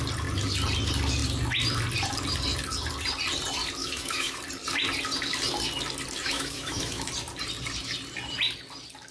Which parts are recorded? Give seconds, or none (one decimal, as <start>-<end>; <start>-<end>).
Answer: 0.0-3.8; 4.4-6.2; 7.1-9.1